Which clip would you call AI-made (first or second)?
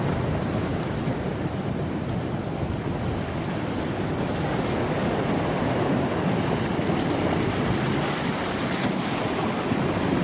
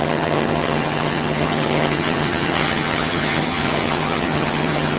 second